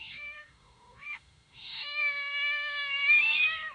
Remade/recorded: remade